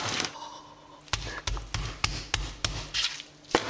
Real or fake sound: real